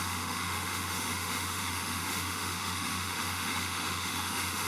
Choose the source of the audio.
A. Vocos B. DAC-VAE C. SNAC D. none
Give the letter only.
B